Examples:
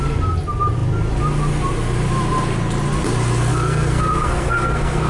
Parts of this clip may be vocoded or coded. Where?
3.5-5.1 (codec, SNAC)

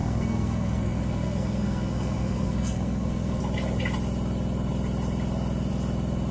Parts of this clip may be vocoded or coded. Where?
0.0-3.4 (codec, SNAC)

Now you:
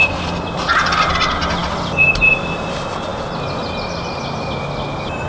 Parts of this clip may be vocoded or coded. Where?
none

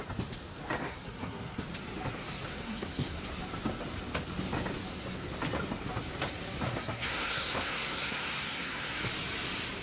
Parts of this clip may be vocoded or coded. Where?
0.8-1.6 (codec, SNAC); 2.5-3.2; 6.7-9.0

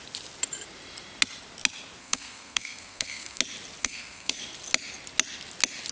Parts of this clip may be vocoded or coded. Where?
2.0-3.4 (codec, SNAC); 3.8-4.4

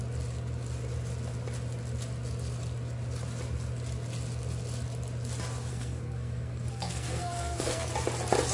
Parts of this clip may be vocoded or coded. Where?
5.7-7.9 (codec, SNAC)

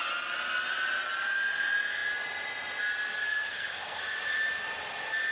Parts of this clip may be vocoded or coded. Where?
3.2-4.0 (codec, SNAC)

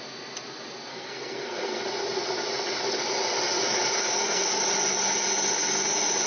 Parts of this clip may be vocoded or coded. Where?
0.9-1.8 (codec, SNAC); 4.0-4.6